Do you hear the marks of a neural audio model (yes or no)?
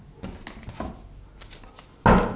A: no